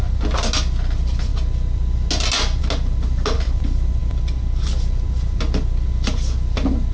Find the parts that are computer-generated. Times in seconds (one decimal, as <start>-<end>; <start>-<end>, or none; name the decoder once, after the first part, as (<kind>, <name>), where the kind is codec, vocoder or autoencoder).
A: none